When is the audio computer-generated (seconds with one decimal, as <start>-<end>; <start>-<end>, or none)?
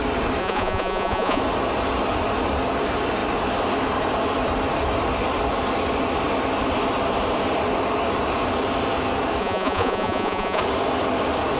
0.4-1.4; 9.4-10.6